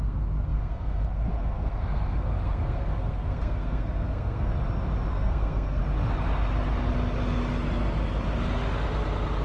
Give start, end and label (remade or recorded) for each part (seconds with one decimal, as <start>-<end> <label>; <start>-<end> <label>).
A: 0.0-4.5 remade; 4.5-5.1 recorded; 5.1-5.8 remade; 5.8-9.4 recorded